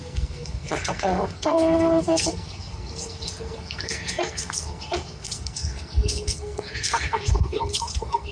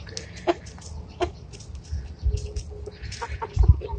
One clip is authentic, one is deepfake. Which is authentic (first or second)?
second